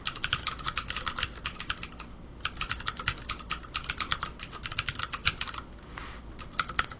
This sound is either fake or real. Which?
real